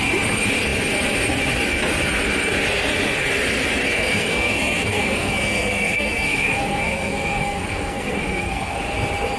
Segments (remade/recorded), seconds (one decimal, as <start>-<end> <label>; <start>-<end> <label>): 0.0-3.9 recorded; 3.9-8.8 remade; 8.8-9.4 recorded